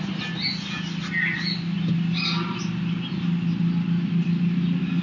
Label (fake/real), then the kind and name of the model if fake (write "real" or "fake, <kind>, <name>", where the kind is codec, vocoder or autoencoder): real